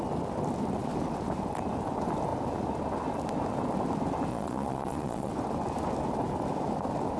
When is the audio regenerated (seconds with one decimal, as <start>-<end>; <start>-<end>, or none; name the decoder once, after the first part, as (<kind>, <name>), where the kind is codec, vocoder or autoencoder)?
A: 4.3-5.3 (vocoder, Vocos)